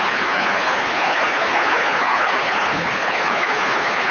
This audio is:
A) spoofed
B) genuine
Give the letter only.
A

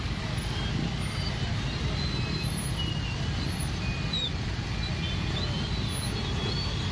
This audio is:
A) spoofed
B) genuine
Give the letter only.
B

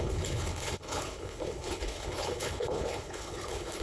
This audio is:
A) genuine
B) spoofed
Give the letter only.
B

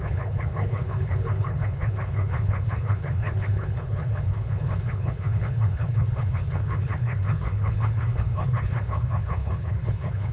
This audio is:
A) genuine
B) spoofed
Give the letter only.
B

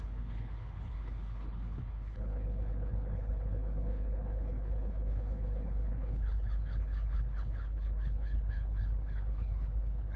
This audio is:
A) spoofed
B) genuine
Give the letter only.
A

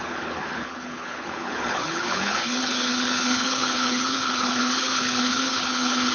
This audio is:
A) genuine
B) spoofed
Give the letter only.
B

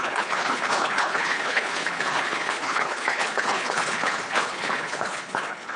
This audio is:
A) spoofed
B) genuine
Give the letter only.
A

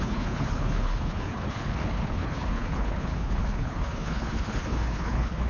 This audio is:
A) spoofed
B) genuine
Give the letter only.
A